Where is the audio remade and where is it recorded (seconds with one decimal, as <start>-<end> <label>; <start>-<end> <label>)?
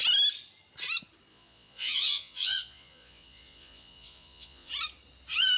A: 0.0-1.3 recorded; 1.3-4.7 remade; 4.7-5.6 recorded